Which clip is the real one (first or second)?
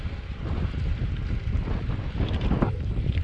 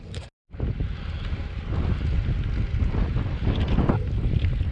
second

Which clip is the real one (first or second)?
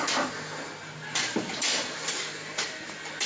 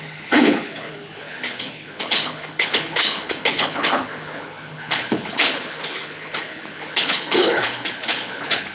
first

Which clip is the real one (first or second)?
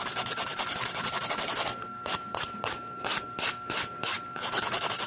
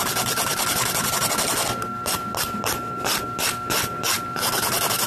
second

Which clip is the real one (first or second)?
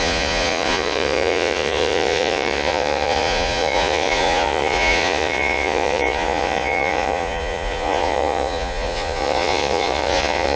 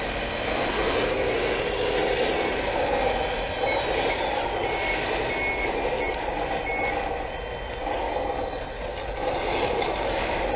second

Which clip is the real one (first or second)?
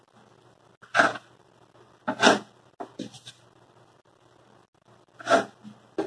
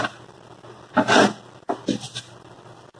first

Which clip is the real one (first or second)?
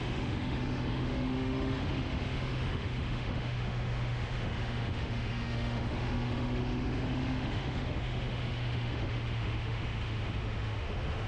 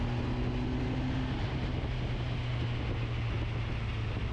second